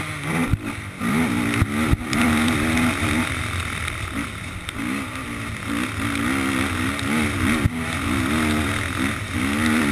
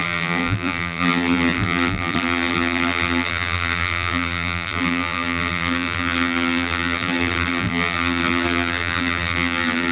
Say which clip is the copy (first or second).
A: second